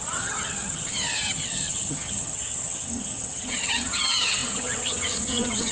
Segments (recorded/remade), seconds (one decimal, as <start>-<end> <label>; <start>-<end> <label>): 0.0-5.7 remade